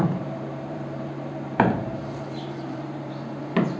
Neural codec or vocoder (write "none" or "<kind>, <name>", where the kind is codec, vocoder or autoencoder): vocoder, BigVGAN v2